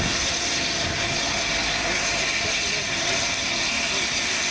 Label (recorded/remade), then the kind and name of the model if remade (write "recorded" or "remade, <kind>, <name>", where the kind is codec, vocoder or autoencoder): recorded